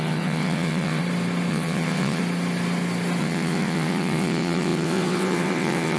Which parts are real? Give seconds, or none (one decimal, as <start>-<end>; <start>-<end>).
1.0-1.5; 2.2-3.2